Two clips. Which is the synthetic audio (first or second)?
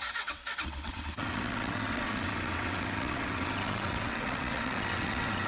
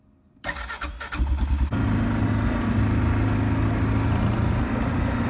first